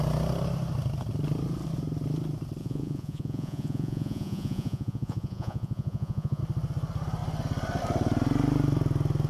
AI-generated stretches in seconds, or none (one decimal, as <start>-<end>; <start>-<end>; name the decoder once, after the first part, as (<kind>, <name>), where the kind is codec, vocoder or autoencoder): 2.6-6.4 (vocoder, Vocos)